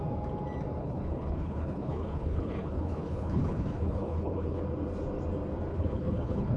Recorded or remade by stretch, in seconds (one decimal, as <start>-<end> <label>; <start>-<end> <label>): 0.0-0.8 recorded; 0.8-4.6 remade; 4.6-5.7 recorded; 5.7-6.6 remade